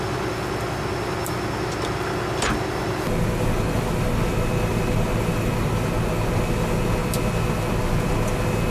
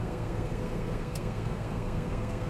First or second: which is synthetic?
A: second